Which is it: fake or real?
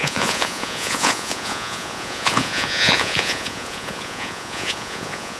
fake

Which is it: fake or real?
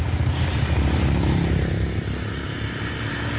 real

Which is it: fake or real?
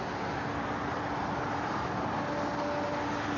real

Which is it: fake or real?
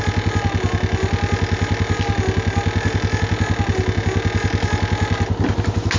real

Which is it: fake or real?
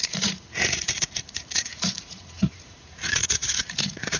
fake